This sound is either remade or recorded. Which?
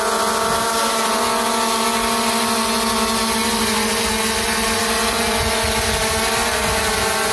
recorded